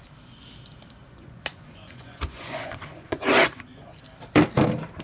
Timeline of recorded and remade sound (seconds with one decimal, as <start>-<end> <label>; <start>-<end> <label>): 0.0-1.0 recorded; 1.0-4.0 remade; 4.0-5.0 recorded